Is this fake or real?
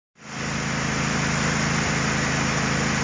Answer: real